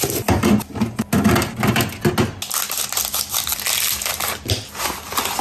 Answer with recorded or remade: recorded